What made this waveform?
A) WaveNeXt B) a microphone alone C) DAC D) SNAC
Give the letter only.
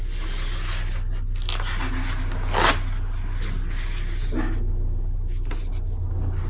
B